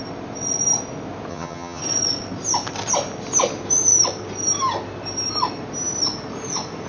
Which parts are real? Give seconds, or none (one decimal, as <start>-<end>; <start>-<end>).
0.0-1.3; 1.8-6.9